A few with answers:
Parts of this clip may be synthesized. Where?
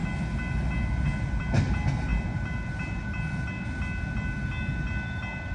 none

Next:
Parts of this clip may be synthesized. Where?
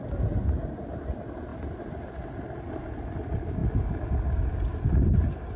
none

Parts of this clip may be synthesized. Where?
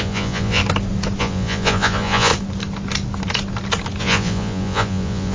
0.0-0.6 (vocoder, Vocos); 1.2-2.3; 4.0-5.3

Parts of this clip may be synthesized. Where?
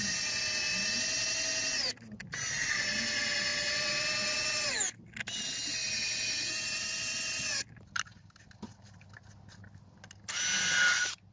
none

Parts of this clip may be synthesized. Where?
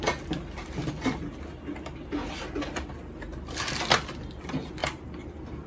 none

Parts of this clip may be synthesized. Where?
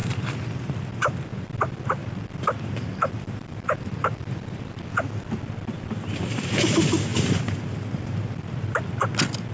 0.0-1.6 (vocoder, BigVGAN v2); 2.0-4.4; 7.1-8.9